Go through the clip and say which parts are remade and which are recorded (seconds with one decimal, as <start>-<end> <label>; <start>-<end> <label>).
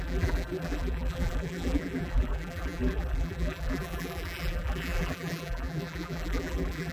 0.0-6.9 remade